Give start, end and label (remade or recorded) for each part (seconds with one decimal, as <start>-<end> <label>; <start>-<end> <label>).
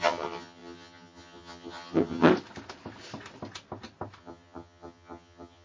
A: 0.0-2.3 remade; 2.3-4.2 recorded; 4.2-5.6 remade